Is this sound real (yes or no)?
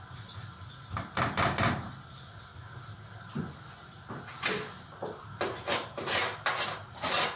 yes